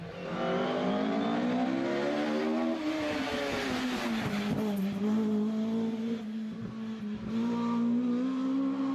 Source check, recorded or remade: recorded